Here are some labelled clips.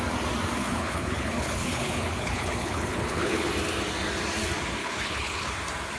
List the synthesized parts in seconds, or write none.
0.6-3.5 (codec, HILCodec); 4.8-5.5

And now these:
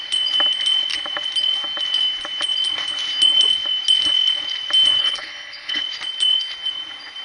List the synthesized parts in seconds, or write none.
5.0-5.8 (codec, HILCodec)

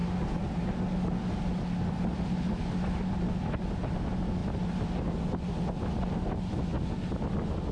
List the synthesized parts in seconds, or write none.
none